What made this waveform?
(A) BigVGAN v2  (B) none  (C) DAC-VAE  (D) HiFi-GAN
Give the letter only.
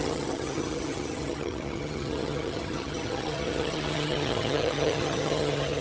D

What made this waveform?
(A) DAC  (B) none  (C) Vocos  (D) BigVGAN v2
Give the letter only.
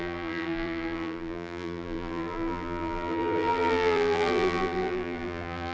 D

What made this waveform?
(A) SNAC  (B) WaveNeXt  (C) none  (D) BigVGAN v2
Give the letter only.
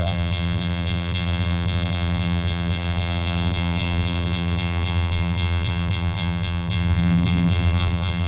D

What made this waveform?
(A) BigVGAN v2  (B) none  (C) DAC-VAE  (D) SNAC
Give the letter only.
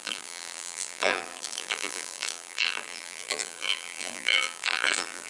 A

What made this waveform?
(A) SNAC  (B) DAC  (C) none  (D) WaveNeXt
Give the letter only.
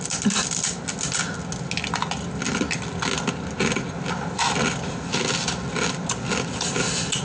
C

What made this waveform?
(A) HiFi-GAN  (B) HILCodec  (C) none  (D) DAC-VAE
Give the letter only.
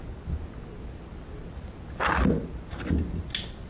C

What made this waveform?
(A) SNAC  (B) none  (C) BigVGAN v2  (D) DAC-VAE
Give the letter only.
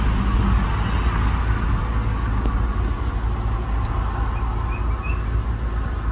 B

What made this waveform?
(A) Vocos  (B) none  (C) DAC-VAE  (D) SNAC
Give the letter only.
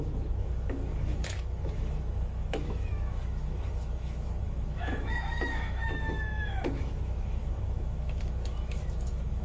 C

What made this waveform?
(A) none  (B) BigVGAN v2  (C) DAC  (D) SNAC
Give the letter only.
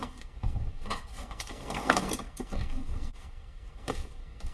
D